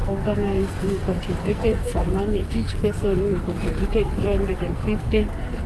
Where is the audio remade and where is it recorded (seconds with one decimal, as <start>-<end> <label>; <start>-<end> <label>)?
0.0-5.7 remade